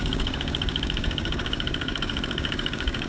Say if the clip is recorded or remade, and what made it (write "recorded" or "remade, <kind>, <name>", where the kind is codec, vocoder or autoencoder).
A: remade, codec, DAC